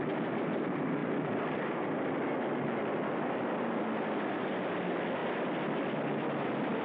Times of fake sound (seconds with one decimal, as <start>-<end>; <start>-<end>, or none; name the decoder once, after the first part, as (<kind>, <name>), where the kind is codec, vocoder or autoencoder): none